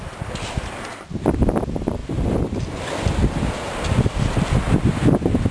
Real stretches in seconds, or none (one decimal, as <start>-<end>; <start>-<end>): 0.0-5.5